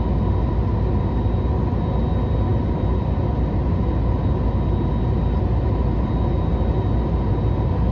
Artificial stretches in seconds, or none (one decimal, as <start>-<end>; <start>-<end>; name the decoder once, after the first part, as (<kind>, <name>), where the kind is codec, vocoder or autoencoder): none